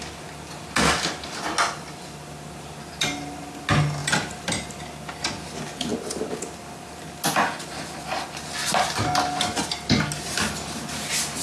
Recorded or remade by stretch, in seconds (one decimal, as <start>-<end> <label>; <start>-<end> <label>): 0.0-11.4 recorded